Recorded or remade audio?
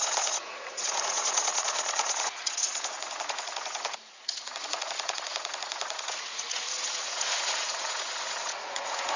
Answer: remade